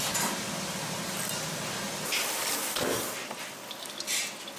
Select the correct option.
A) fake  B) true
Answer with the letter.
B